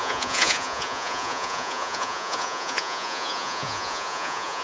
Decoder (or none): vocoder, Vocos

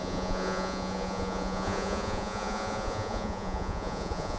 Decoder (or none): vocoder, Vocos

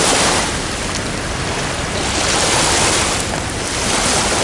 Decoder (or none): none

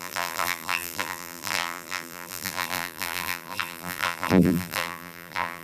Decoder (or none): vocoder, BigVGAN v2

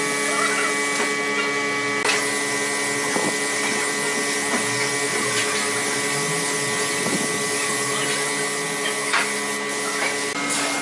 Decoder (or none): none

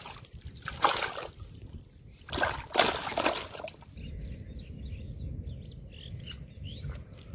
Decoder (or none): none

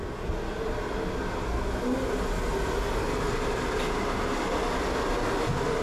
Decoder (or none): none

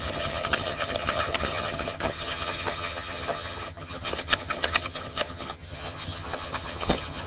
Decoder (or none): vocoder, HiFi-GAN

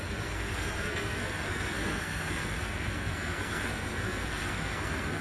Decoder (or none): codec, SNAC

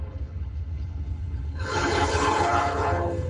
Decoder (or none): codec, HILCodec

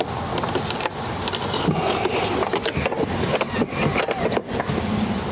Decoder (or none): none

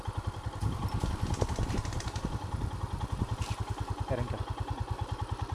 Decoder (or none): none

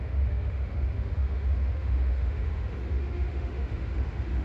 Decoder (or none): autoencoder, DAC-VAE